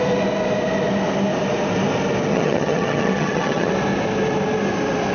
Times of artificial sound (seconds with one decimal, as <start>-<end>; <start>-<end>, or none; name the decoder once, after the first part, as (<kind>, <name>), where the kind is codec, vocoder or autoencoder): 2.3-3.7 (vocoder, HiFi-GAN)